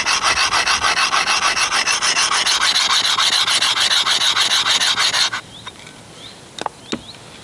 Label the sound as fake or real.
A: real